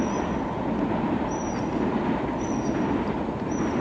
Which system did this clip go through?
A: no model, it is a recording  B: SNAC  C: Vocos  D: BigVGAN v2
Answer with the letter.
A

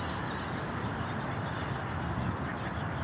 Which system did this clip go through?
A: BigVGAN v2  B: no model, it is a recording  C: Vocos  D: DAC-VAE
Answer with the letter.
B